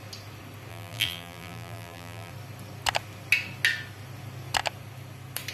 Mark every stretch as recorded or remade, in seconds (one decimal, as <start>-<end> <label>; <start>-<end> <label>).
0.0-0.7 recorded; 0.7-2.3 remade; 2.3-5.5 recorded